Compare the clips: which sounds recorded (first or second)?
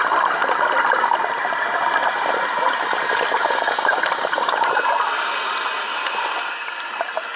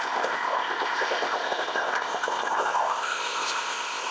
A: first